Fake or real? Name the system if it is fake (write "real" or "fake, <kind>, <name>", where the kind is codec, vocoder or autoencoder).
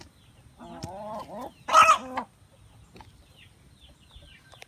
real